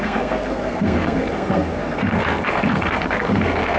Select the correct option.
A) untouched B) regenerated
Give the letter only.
B